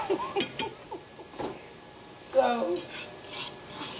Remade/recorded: recorded